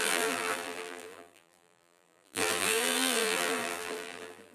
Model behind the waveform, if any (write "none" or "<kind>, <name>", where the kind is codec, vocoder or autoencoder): vocoder, BigVGAN v2